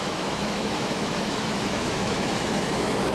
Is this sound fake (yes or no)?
yes